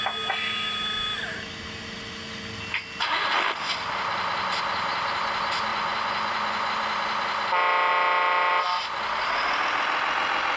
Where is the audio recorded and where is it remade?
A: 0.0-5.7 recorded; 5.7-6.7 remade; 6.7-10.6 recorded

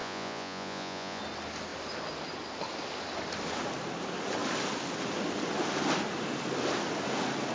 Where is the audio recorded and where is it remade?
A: 0.0-1.2 remade; 1.2-7.5 recorded

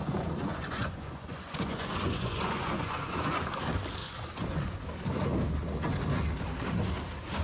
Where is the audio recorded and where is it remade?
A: 0.0-3.6 remade; 3.6-4.0 recorded; 4.0-4.8 remade; 4.8-7.4 recorded

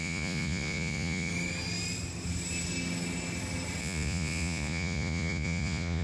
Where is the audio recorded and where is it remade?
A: 0.0-1.3 remade; 1.3-3.8 recorded; 3.8-6.0 remade

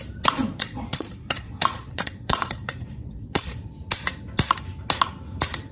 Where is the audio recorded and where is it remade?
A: 0.0-0.4 recorded; 0.4-3.8 remade; 3.8-5.7 recorded

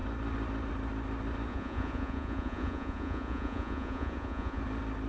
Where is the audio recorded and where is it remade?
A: 0.0-1.5 recorded; 1.5-4.6 remade; 4.6-5.1 recorded

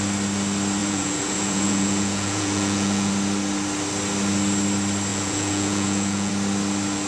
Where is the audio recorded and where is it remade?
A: 0.0-0.8 recorded; 0.8-3.1 remade; 3.1-5.1 recorded; 5.1-6.3 remade; 6.3-7.1 recorded